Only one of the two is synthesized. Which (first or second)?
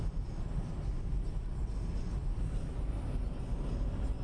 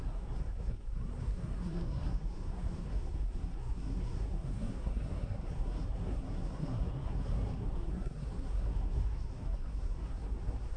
second